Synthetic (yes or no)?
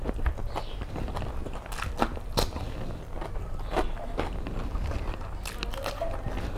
no